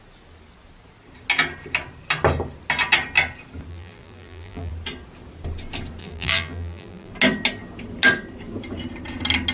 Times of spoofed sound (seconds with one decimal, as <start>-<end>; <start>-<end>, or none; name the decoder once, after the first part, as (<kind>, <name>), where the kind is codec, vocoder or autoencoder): 3.7-4.7 (vocoder, BigVGAN v2); 6.0-7.1